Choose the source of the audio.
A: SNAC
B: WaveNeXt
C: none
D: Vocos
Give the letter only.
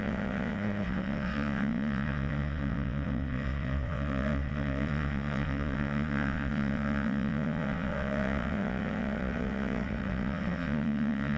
B